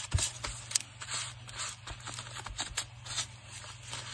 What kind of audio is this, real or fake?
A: real